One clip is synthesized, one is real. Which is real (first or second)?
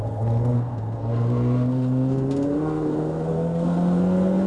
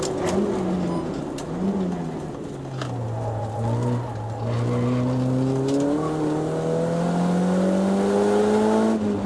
second